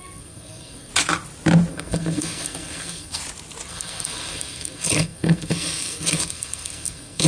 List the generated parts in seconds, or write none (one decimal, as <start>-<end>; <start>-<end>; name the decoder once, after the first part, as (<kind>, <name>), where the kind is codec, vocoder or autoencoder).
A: 0.0-0.9 (codec, SNAC); 1.7-3.2; 3.7-7.3